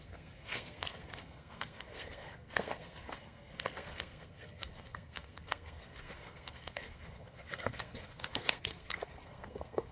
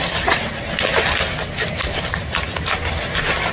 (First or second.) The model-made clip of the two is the first